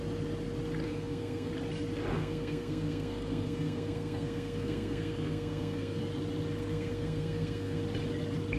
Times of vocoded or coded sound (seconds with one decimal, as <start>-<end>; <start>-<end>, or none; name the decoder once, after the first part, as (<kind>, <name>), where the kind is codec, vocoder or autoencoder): 0.8-1.5 (codec, SNAC); 2.1-6.0; 6.6-7.8